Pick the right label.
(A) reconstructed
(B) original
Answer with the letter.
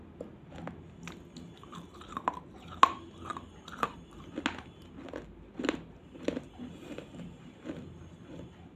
B